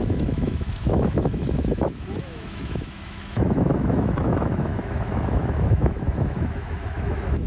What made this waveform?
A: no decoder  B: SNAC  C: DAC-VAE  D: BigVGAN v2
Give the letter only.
C